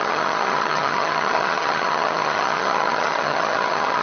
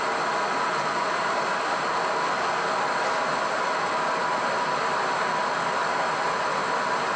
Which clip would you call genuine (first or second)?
second